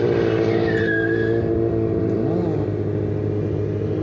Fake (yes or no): no